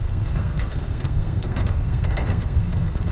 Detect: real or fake fake